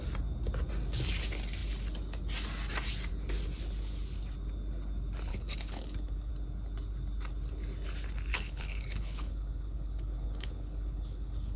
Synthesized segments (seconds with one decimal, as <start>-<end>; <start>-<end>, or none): 5.3-6.3; 8.3-11.6